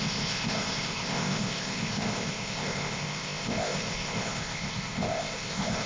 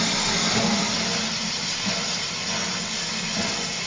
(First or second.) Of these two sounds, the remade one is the first